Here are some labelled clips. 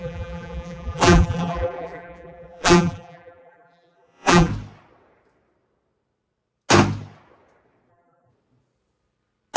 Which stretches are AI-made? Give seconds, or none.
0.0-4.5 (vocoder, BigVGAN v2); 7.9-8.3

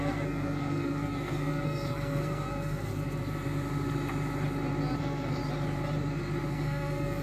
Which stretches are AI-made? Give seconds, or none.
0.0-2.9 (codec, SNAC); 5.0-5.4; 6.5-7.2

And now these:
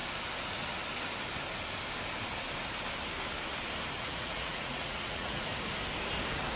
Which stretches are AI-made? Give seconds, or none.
4.0-5.5 (vocoder, Vocos)

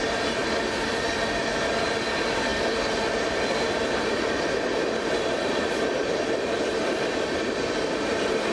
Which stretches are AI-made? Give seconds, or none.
none

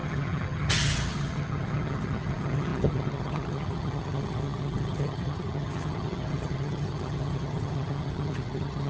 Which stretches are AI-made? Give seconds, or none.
0.0-8.9 (vocoder, HiFi-GAN)